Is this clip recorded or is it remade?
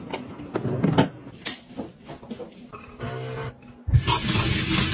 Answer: recorded